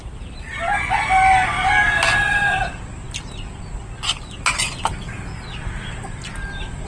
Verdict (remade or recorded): recorded